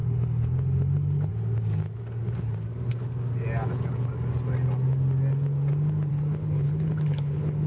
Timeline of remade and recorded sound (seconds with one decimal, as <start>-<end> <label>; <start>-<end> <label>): 0.0-1.3 remade; 1.3-6.1 recorded; 6.1-7.7 remade